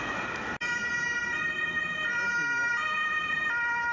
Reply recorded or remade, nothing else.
recorded